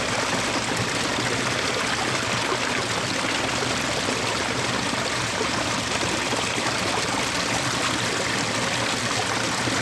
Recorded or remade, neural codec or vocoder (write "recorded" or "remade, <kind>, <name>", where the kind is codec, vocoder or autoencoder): recorded